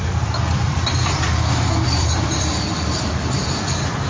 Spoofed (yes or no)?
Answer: yes